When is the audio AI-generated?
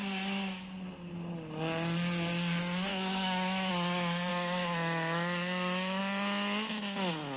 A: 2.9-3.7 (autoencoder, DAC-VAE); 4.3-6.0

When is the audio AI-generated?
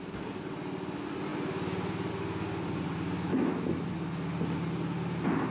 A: 3.3-3.9 (autoencoder, DAC-VAE)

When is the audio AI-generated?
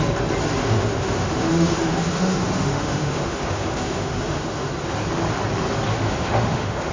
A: 0.6-4.7 (autoencoder, DAC-VAE); 5.9-6.9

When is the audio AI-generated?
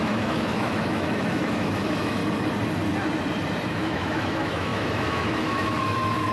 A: 0.0-2.2 (autoencoder, DAC-VAE); 3.7-6.3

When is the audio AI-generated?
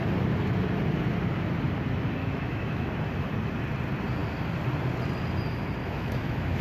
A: 2.2-2.9 (autoencoder, DAC-VAE); 5.8-6.6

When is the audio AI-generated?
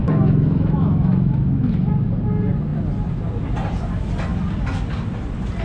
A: 0.0-1.9 (autoencoder, DAC-VAE)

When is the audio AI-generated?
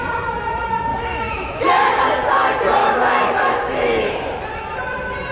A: 0.9-2.0 (autoencoder, DAC-VAE); 2.8-4.1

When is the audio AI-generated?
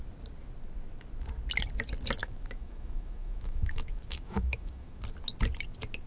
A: 2.2-5.0 (autoencoder, DAC-VAE)